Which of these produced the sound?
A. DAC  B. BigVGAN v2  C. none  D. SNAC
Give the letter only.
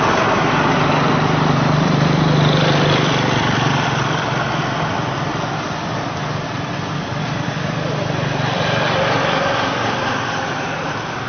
B